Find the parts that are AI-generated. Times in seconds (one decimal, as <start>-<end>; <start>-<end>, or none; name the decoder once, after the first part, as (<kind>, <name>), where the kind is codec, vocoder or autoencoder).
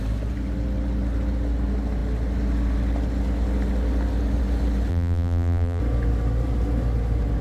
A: 4.9-5.8 (vocoder, BigVGAN v2)